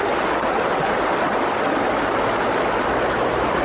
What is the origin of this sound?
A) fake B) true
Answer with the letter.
A